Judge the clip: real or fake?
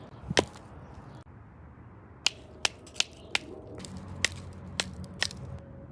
real